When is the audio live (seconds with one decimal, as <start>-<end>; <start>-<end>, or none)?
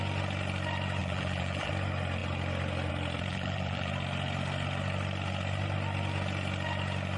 0.0-1.0; 1.7-3.3; 3.9-7.2